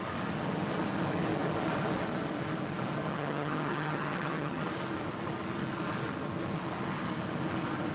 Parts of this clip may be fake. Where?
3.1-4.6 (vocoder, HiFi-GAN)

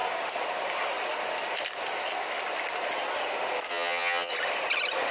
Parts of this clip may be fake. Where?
3.7-4.3 (vocoder, HiFi-GAN)

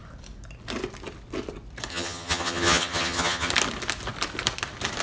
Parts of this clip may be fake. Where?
1.9-3.5 (vocoder, HiFi-GAN)